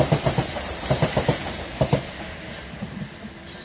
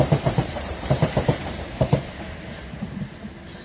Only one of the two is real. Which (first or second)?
first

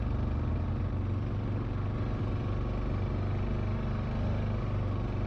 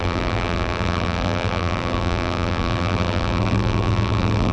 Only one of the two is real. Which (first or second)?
first